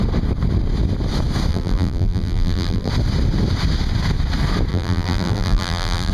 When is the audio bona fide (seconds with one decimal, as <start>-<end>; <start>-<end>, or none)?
0.0-1.5; 2.9-4.7